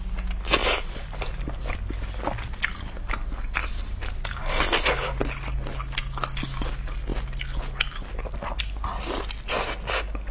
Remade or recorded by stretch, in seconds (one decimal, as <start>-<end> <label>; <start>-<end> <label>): 0.0-0.6 recorded; 0.6-1.8 remade; 1.8-3.6 recorded; 3.6-4.6 remade; 4.6-10.3 recorded